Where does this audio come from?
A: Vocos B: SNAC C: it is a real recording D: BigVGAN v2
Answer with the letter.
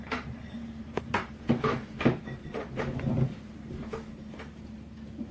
D